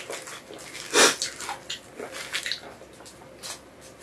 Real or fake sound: real